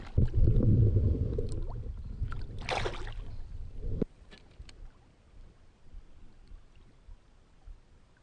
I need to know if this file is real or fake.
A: real